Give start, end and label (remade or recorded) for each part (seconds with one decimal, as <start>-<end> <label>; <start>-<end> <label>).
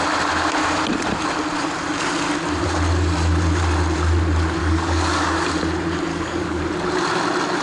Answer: 0.0-4.6 recorded; 4.6-5.5 remade; 5.5-6.1 recorded; 6.1-6.6 remade; 6.6-7.6 recorded